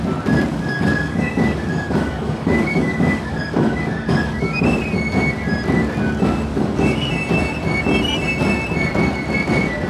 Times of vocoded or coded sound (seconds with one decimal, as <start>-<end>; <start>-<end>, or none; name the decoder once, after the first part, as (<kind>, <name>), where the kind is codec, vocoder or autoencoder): 0.5-4.6 (codec, DAC); 6.5-7.1